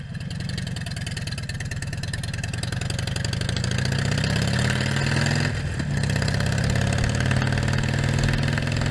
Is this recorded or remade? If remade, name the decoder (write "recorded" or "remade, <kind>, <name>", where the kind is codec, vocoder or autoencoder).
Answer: recorded